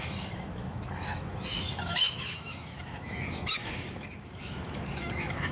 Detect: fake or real fake